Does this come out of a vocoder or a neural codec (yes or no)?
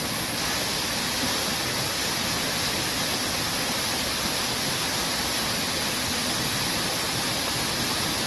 no